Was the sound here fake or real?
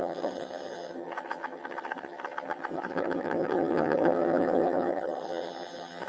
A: fake